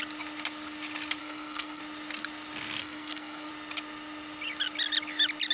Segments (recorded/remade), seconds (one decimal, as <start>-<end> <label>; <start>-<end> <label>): 0.0-1.2 recorded; 1.2-1.8 remade; 1.8-2.8 recorded; 2.8-3.5 remade; 3.5-5.5 recorded